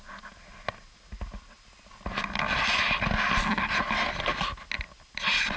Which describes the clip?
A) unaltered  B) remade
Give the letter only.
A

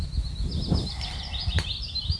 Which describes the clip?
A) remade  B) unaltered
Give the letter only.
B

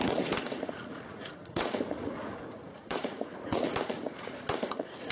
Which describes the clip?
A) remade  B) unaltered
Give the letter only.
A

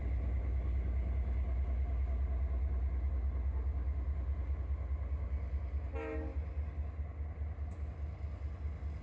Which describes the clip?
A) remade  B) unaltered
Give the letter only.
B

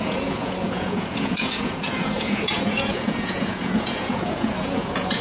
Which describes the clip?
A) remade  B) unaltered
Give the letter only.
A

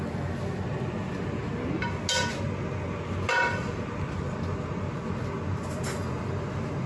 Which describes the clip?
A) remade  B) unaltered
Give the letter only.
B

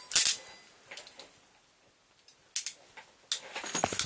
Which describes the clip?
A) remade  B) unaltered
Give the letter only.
B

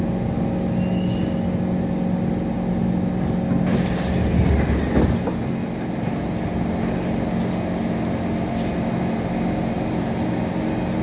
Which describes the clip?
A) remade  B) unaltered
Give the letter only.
B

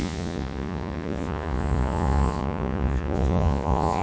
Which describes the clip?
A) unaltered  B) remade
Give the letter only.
B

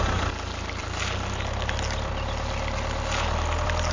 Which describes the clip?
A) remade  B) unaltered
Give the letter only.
B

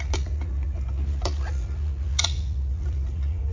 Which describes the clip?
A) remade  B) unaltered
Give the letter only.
A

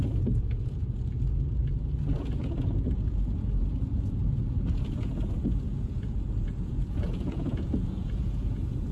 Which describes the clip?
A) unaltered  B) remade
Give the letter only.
B